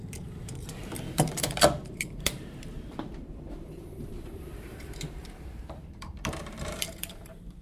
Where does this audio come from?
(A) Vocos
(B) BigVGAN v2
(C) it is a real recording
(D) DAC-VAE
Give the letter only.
B